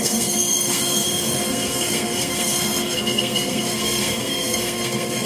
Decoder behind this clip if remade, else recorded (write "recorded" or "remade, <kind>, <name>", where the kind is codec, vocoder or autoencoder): remade, codec, SNAC